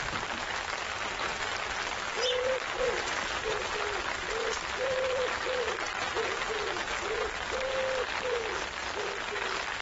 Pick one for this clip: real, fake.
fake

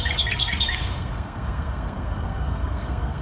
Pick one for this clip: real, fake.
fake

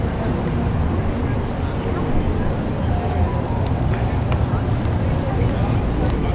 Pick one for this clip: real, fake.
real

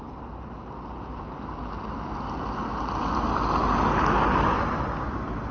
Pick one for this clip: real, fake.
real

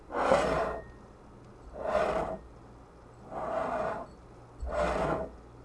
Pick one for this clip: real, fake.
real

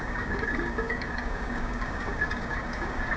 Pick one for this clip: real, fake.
fake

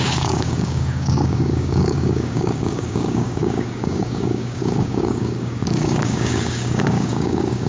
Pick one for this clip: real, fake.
fake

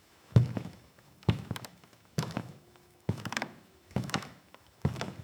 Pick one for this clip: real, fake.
fake